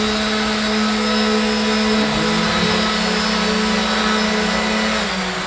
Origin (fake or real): real